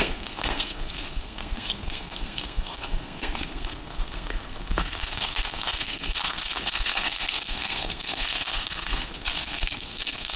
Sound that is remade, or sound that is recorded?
remade